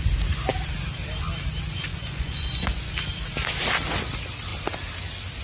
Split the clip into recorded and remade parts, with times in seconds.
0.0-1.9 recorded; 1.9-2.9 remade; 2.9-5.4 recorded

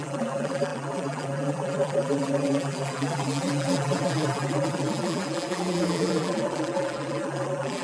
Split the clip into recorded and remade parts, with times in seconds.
0.0-7.8 remade

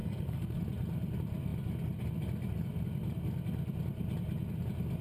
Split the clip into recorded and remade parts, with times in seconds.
0.0-0.6 remade; 0.6-5.0 recorded

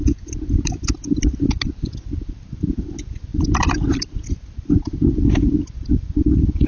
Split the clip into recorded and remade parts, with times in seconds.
0.0-6.7 recorded

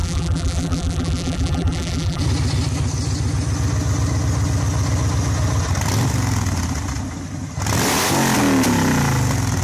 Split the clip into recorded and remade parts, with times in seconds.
0.0-2.2 remade; 2.2-9.6 recorded